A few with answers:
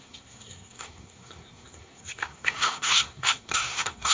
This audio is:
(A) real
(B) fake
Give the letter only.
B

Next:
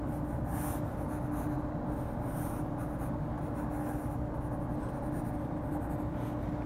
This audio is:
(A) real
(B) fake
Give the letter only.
A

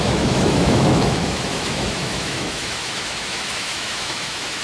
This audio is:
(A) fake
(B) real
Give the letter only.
A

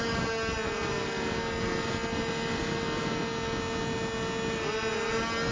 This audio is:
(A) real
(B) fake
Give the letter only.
A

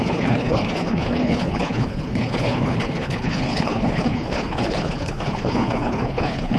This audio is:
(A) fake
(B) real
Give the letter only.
A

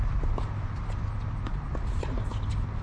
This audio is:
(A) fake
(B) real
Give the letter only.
B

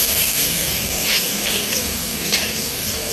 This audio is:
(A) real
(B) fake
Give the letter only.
B